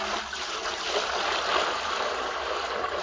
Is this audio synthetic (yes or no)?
no